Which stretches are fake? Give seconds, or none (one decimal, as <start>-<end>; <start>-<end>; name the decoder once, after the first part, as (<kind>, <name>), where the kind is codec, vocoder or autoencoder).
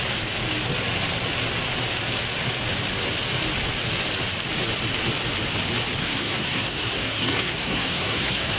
6.0-8.6 (codec, SNAC)